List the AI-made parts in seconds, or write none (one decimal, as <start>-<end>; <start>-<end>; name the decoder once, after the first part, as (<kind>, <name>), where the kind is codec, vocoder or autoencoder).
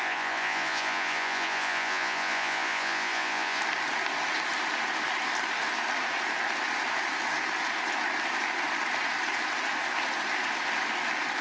0.0-3.6 (vocoder, Vocos)